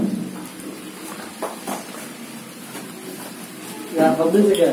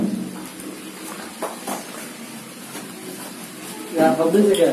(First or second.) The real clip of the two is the second